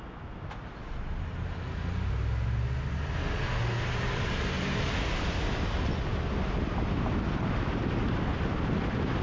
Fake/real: real